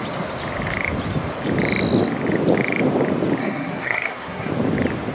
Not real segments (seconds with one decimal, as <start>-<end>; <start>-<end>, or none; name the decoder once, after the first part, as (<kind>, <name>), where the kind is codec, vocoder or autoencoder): 3.4-4.5 (codec, SNAC)